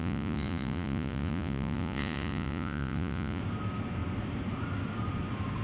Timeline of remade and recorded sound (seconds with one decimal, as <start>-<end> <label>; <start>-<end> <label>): 0.0-3.4 remade; 3.4-5.6 recorded